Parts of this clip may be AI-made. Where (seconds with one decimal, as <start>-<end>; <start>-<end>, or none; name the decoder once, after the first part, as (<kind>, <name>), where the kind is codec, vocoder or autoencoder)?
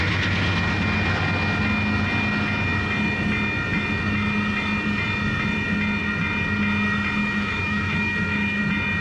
7.2-8.6 (autoencoder, DAC-VAE)